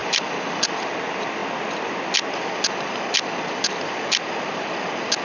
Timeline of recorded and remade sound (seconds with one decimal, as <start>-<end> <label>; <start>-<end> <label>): 0.0-0.7 remade; 0.7-5.2 recorded